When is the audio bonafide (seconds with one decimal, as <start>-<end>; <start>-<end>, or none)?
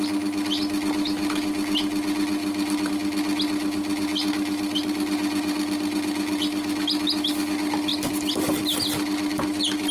0.0-2.4; 2.9-4.1; 7.3-7.9